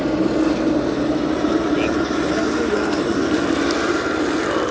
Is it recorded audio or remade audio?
recorded